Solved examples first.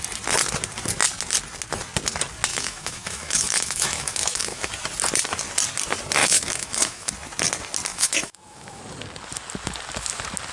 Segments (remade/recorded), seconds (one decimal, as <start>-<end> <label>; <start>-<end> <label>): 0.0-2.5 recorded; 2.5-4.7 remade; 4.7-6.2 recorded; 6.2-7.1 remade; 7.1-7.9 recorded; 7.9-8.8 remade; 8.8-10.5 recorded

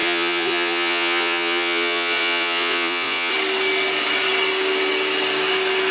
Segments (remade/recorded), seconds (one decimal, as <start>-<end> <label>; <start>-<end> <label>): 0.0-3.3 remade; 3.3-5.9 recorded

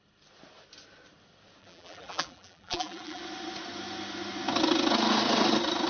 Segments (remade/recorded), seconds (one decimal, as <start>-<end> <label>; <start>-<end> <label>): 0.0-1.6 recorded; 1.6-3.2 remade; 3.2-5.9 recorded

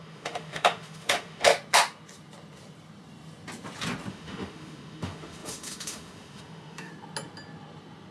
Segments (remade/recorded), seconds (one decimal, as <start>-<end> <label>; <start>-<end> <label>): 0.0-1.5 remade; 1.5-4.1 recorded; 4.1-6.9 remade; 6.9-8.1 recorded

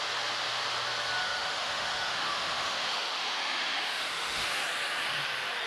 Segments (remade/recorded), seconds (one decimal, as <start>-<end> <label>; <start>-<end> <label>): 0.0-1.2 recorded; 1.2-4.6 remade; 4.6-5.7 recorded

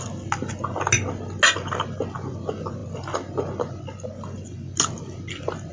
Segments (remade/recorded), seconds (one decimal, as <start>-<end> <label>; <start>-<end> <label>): 0.0-5.7 recorded

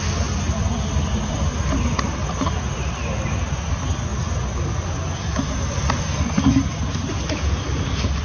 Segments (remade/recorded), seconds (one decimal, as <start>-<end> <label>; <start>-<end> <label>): 0.0-8.2 recorded

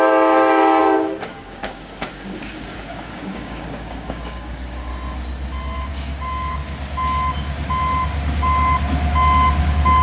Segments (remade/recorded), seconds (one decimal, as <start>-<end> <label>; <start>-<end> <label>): 0.0-4.9 remade; 4.9-5.9 recorded; 5.9-6.6 remade; 6.6-9.6 recorded; 9.6-10.0 remade